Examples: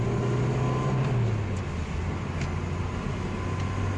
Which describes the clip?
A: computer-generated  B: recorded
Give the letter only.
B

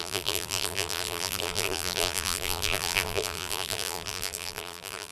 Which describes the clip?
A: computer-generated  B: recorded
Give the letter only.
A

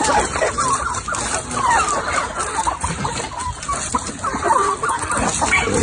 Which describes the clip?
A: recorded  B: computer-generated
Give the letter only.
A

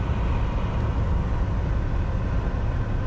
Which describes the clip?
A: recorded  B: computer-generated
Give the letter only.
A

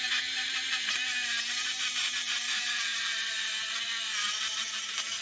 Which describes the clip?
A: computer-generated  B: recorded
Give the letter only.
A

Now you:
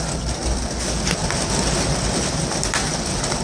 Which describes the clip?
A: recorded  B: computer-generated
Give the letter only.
A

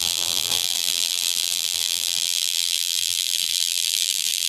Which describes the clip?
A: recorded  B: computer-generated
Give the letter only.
B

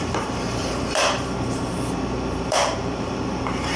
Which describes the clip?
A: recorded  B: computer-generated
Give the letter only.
B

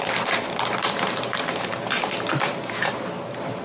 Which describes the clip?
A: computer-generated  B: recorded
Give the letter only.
A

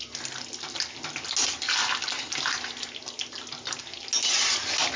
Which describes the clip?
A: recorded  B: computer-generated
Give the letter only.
A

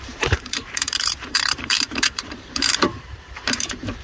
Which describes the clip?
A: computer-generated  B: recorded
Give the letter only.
A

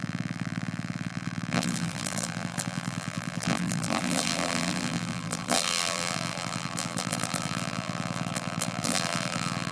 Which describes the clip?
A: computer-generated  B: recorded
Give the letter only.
A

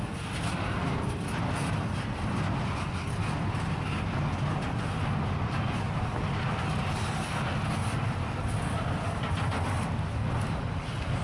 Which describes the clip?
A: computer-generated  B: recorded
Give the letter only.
B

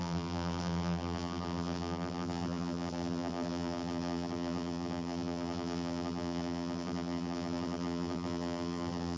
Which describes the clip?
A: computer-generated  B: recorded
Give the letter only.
A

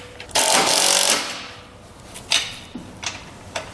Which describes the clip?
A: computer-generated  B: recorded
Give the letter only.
A